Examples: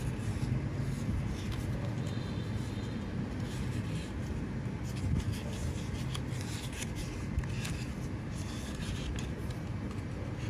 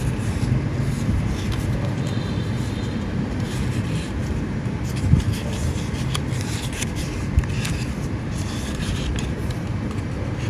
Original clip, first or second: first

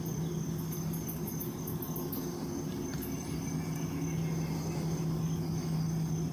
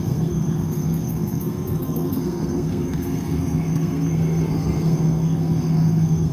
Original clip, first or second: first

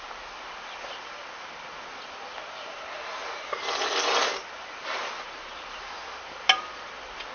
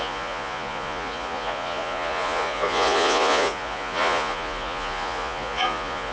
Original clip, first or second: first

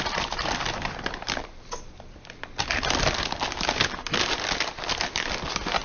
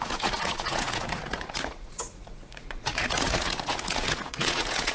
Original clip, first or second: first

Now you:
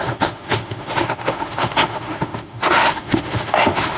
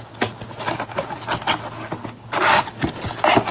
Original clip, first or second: second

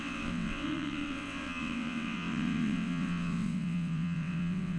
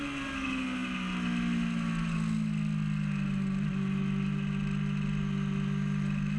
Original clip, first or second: second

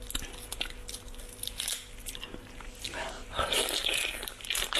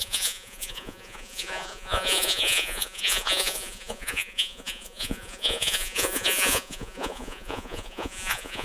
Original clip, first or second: first